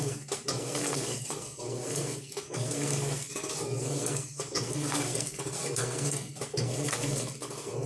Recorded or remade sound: remade